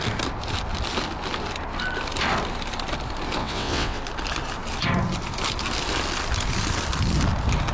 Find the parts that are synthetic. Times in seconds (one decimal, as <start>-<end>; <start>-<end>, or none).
3.4-4.0